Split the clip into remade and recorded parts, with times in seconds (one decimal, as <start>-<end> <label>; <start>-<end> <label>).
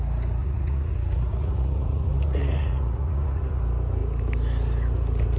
0.0-0.4 recorded; 0.4-3.6 remade; 3.6-5.4 recorded